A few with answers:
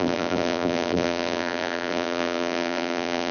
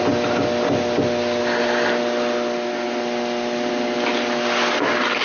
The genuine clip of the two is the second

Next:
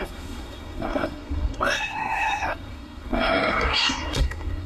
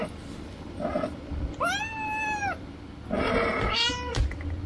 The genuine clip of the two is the second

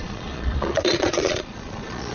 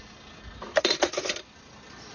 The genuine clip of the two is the second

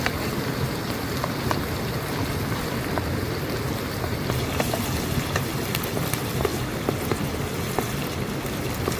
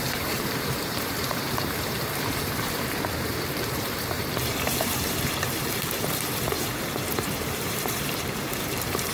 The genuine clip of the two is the first